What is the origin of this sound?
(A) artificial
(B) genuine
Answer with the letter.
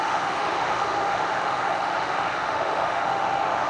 A